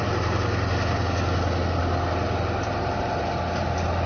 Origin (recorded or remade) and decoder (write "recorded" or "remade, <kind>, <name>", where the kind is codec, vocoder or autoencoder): recorded